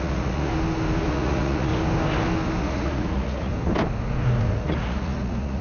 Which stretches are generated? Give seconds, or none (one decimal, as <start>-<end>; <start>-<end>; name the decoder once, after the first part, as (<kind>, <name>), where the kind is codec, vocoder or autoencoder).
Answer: 0.0-0.5 (vocoder, Vocos); 1.1-1.7; 2.6-3.5; 4.5-5.6

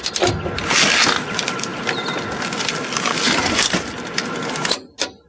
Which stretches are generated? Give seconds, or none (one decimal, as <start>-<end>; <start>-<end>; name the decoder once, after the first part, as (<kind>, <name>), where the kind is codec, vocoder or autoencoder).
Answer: none

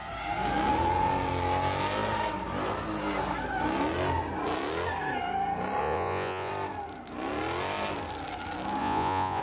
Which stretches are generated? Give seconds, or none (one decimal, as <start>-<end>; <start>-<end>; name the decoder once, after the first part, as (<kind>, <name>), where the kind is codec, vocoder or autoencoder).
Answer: 5.8-6.5 (vocoder, Vocos); 8.8-9.4

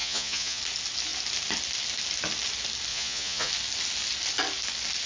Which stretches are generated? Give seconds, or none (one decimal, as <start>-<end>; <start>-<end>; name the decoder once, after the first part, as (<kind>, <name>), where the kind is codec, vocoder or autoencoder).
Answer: 0.0-0.6 (vocoder, Vocos); 2.9-3.5

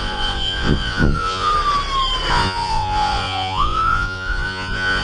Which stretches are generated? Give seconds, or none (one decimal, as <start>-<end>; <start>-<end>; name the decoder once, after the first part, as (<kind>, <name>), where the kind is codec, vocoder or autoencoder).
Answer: 0.0-1.5 (vocoder, Vocos); 2.3-5.0

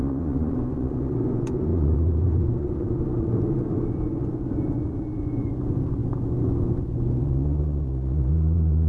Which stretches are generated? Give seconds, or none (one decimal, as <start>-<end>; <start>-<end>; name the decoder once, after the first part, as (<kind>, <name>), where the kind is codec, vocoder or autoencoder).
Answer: 0.0-8.9 (vocoder, Vocos)

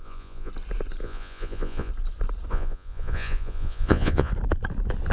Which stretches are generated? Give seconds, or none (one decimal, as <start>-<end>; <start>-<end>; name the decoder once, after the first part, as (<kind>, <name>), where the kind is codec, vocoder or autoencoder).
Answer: 0.0-0.5 (vocoder, Vocos); 1.0-1.9; 2.5-4.3

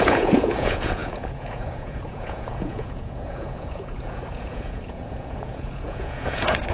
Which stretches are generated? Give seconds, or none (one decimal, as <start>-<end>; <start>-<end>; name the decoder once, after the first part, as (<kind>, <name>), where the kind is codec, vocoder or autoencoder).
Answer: 0.0-6.7 (vocoder, Vocos)